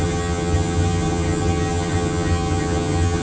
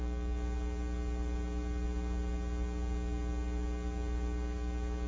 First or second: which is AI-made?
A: first